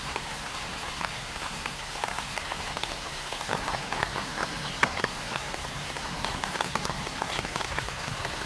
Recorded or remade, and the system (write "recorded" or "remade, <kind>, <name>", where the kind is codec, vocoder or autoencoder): remade, codec, SNAC